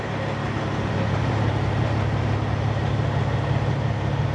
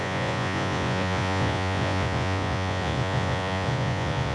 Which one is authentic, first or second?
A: first